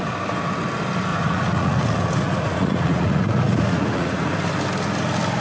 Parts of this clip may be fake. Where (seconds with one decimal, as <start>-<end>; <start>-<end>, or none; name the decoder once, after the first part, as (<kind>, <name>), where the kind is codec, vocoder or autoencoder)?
1.1-4.3 (vocoder, Vocos)